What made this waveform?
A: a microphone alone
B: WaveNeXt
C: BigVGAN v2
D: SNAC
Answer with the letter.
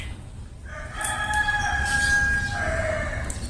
A